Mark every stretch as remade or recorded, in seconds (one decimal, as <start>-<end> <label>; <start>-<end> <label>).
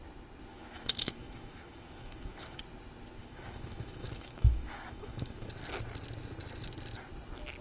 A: 0.0-0.5 recorded; 0.5-2.6 remade; 2.6-3.2 recorded; 3.2-5.5 remade; 5.5-7.6 recorded